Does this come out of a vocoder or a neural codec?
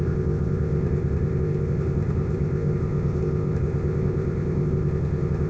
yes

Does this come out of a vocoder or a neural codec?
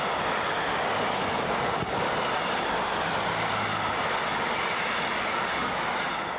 no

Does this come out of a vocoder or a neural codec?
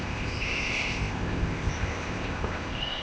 yes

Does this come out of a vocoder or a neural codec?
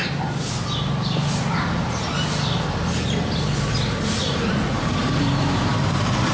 no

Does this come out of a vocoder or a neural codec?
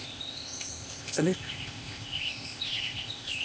yes